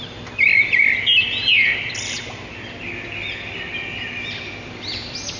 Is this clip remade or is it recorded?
recorded